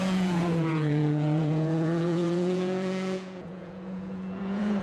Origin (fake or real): fake